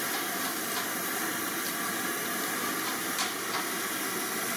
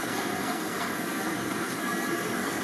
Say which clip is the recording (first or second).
first